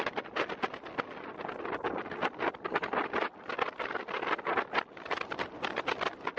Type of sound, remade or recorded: recorded